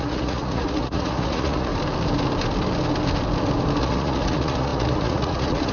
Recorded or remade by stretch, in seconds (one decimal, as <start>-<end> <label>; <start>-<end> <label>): 0.0-1.7 remade; 1.7-3.8 recorded; 3.8-5.7 remade